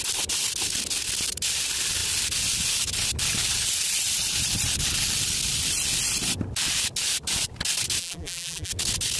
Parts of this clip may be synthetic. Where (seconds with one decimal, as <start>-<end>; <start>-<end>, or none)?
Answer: 8.0-8.7